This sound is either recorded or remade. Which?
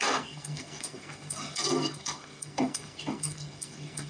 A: remade